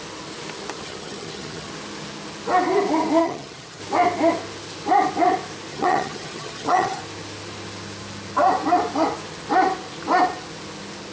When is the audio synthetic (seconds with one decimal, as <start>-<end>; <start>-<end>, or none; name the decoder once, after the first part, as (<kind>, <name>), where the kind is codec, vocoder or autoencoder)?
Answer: 0.8-1.7 (vocoder, HiFi-GAN); 3.2-3.8; 5.7-7.0